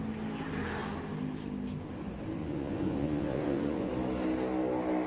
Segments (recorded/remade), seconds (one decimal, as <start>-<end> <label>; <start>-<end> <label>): 0.0-2.4 recorded; 2.4-3.9 remade; 3.9-5.1 recorded